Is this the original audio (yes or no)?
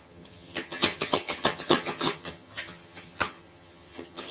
no